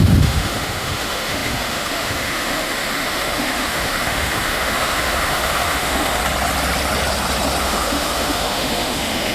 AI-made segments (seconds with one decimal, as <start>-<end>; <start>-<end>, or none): 0.0-6.2; 7.6-9.3